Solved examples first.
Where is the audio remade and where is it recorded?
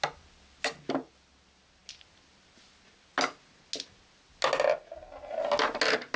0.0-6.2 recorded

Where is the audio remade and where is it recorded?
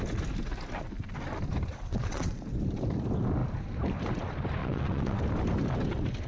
0.0-1.7 recorded; 1.7-2.4 remade; 2.4-4.6 recorded; 4.6-5.2 remade; 5.2-6.3 recorded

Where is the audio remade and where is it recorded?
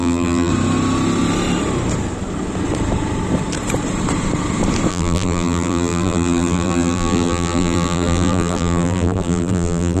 0.0-0.5 remade; 0.5-4.9 recorded; 4.9-10.0 remade